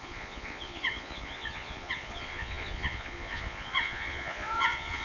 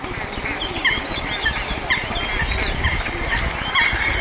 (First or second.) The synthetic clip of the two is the first